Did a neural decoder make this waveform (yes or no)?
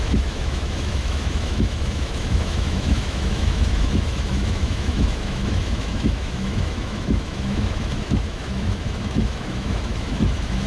yes